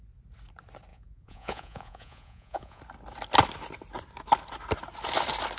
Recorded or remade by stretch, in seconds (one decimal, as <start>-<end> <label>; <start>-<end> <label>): 0.0-0.9 recorded; 0.9-2.8 remade; 2.8-5.6 recorded